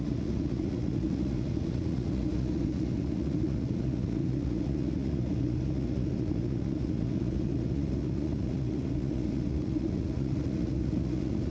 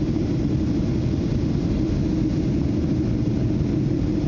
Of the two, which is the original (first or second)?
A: second